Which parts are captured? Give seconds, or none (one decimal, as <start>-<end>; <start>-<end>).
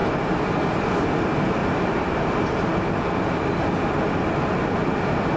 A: 0.0-1.6; 2.2-5.4